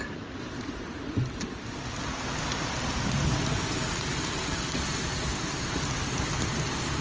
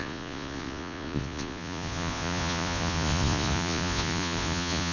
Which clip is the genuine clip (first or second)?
first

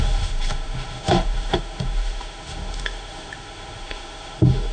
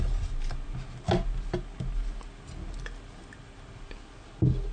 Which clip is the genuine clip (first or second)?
second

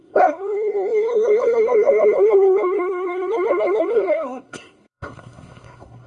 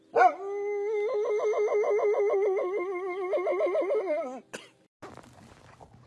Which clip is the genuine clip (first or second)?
second